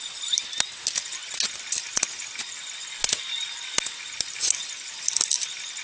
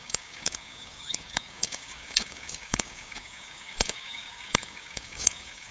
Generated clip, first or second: second